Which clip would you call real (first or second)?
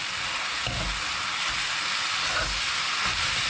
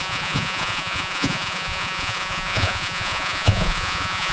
first